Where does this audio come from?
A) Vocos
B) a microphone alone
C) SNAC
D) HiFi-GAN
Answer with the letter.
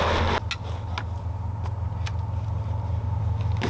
B